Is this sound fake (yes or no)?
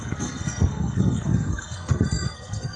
yes